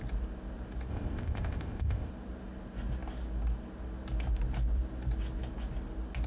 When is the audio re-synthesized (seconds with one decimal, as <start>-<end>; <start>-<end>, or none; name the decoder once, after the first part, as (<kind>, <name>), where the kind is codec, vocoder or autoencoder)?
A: 0.9-2.1 (codec, ZipCodec)